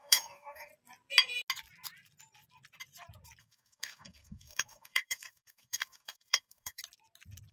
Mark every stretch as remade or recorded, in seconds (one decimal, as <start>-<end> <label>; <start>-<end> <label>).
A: 0.0-0.7 remade; 0.7-3.4 recorded; 3.4-6.8 remade; 6.8-7.5 recorded